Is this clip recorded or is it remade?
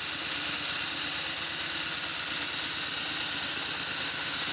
recorded